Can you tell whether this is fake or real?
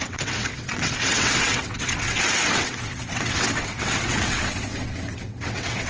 fake